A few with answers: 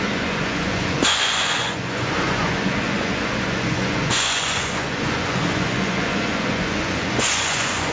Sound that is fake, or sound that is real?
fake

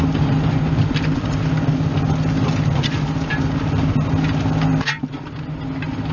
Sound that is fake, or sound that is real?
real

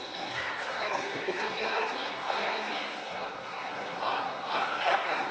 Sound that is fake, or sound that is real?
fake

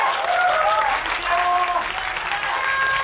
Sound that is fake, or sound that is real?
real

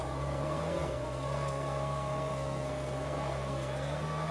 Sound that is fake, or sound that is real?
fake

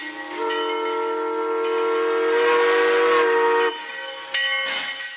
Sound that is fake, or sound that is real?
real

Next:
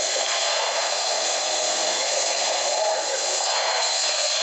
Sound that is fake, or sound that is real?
fake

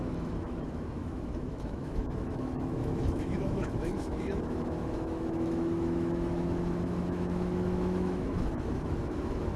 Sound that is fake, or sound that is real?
fake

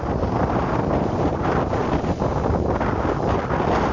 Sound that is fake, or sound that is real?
real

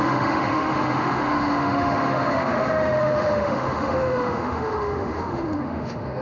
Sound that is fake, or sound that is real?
fake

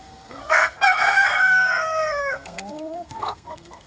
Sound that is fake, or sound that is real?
fake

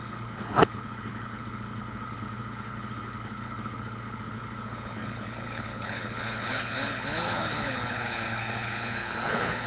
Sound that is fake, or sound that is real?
fake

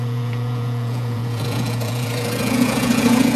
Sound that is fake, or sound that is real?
fake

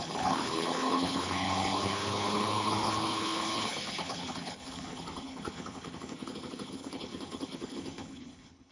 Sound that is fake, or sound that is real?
fake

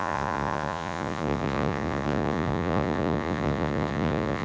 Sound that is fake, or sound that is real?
fake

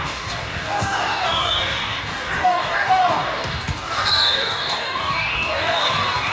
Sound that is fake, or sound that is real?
fake